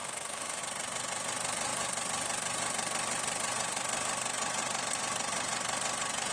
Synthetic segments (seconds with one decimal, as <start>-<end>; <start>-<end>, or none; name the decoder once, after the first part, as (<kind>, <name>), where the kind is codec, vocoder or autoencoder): 0.0-0.6 (autoencoder, DAC-VAE)